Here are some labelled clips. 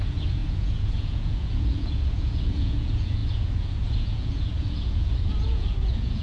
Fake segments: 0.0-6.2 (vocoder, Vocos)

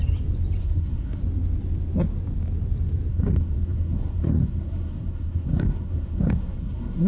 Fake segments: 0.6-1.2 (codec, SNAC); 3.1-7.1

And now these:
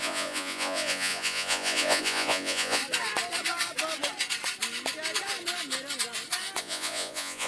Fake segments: 0.0-2.8 (vocoder, Vocos); 6.6-7.5

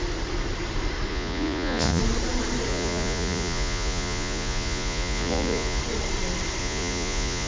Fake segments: 1.1-2.0 (vocoder, Vocos); 2.7-5.8; 6.6-7.5